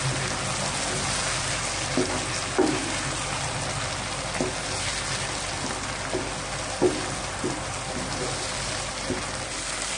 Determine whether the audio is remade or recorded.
recorded